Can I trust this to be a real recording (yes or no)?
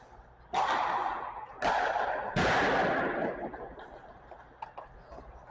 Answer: yes